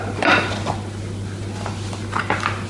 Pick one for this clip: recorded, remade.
recorded